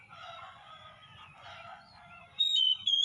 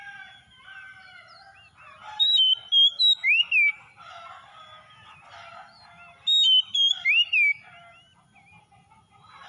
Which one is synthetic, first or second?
first